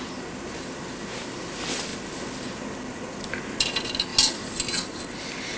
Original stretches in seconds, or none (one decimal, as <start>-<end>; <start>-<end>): 0.0-5.6